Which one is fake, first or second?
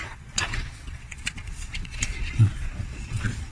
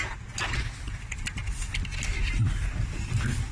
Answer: first